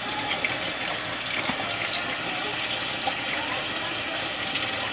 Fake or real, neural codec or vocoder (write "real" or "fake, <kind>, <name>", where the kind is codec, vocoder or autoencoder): real